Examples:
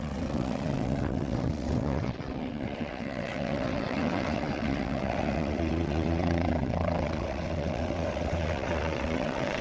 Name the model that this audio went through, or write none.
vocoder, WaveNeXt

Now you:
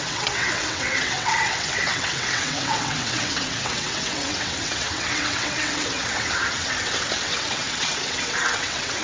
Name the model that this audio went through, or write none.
vocoder, WaveNeXt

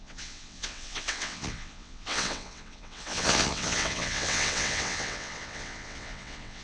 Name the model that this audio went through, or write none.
vocoder, WaveNeXt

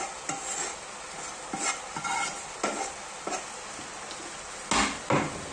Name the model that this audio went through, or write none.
none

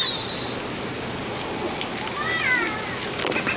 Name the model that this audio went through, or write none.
none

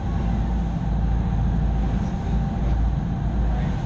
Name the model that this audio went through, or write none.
none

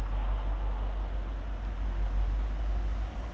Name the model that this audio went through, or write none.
none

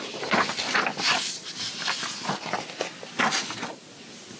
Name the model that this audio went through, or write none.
none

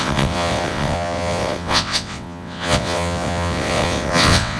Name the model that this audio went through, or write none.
vocoder, WaveNeXt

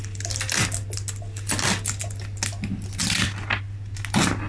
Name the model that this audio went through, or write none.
none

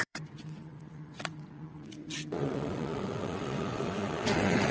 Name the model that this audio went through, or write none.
vocoder, WaveNeXt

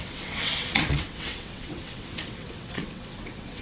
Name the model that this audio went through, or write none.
vocoder, WaveNeXt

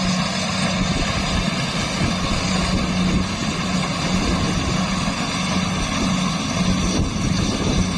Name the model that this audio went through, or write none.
none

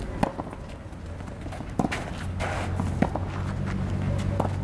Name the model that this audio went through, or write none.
none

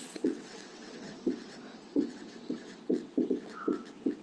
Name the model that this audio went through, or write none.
vocoder, WaveNeXt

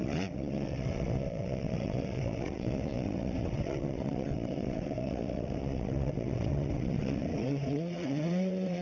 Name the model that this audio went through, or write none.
vocoder, WaveNeXt